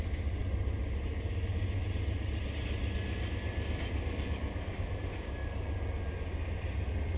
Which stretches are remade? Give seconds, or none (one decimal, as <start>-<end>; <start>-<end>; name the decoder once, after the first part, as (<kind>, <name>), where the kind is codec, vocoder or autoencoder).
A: none